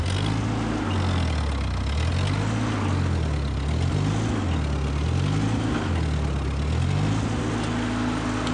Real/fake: real